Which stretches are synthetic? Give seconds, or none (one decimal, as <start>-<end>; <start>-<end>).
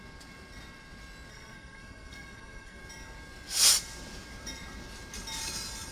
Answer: 1.3-2.8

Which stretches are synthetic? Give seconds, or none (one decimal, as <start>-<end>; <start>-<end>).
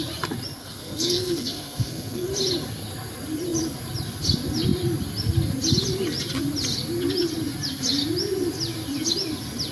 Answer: 0.6-2.3